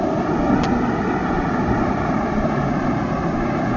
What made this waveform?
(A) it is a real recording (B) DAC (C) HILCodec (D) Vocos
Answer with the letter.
A